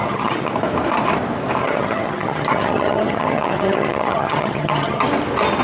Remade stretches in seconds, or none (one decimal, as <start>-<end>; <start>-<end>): 0.0-0.5; 1.6-5.0